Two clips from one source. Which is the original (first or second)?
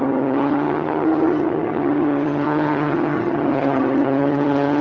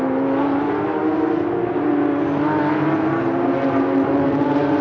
second